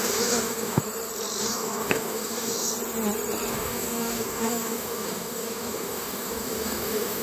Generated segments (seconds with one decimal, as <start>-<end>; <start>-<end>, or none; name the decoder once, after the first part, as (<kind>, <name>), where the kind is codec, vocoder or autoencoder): 0.0-0.8 (codec, DAC); 1.4-2.7; 3.5-7.2